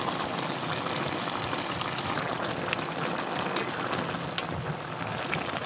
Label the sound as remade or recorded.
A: recorded